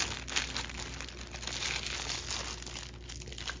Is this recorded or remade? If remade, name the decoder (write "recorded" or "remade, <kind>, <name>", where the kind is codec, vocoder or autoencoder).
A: recorded